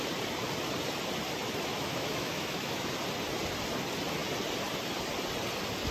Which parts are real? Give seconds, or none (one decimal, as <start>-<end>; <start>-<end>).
0.0-1.7; 2.9-5.9